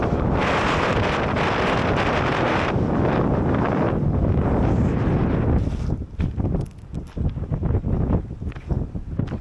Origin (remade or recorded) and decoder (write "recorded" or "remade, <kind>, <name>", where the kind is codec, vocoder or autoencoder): recorded